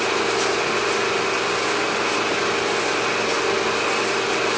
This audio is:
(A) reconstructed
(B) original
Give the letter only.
B